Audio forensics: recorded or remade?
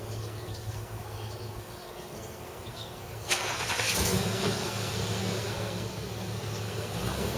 remade